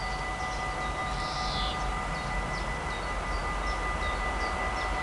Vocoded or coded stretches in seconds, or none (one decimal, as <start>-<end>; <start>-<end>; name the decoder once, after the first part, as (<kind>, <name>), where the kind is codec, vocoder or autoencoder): 1.0-1.7 (vocoder, BigVGAN v2)